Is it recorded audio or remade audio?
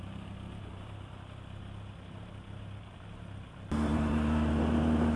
recorded